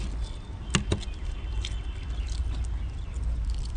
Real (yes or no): yes